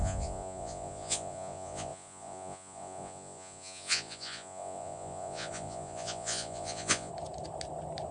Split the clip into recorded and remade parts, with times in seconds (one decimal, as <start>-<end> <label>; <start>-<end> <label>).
0.0-7.1 remade; 7.1-8.1 recorded